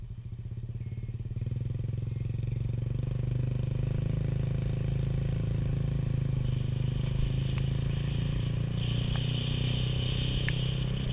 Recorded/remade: recorded